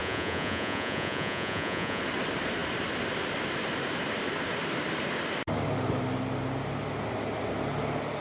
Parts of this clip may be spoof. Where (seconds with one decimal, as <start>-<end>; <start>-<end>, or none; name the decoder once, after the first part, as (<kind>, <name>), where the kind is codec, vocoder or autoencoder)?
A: 0.0-2.0 (vocoder, Vocos)